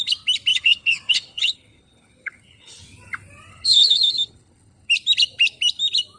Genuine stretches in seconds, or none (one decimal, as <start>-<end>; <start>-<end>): 0.0-0.5; 2.8-3.5; 4.9-6.2